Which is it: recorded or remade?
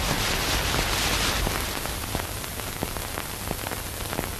recorded